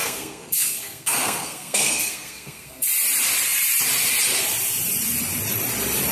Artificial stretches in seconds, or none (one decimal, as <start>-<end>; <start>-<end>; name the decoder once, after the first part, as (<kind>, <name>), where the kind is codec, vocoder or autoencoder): 0.0-2.8 (codec, SNAC)